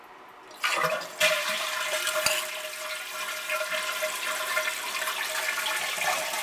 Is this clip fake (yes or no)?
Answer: no